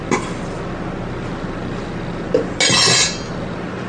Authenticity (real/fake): real